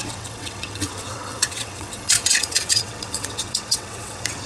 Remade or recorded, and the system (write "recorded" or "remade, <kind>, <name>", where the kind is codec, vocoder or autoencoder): remade, vocoder, WaveNeXt